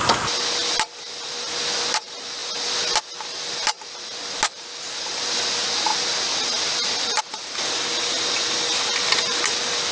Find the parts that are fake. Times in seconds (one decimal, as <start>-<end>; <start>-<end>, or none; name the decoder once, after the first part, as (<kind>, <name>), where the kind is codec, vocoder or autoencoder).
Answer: none